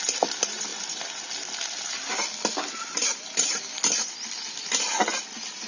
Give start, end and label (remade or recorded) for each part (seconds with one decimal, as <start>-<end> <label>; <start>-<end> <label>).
0.0-5.7 recorded